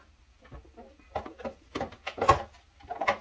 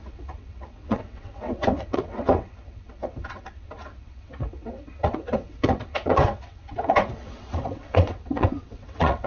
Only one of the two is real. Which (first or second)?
first